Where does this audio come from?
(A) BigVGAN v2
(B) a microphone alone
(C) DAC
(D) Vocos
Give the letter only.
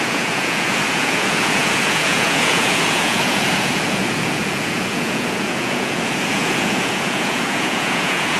D